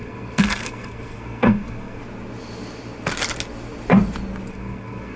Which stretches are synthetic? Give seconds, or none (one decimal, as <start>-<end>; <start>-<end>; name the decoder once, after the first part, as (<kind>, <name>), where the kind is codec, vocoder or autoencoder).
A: 0.0-2.0 (codec, SNAC); 4.5-5.2